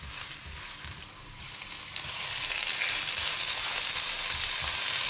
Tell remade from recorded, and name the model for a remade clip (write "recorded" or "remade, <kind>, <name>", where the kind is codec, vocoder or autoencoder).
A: recorded